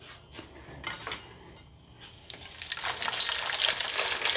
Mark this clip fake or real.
real